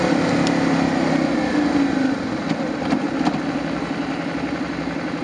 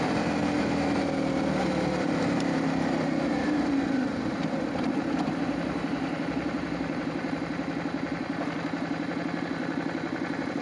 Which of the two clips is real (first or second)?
first